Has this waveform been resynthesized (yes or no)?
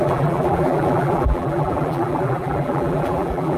yes